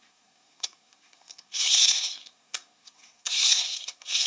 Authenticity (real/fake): fake